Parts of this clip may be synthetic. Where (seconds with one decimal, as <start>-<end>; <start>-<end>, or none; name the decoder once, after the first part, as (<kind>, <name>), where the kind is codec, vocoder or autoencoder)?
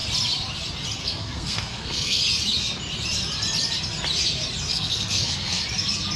1.0-2.2 (codec, SNAC); 4.7-5.6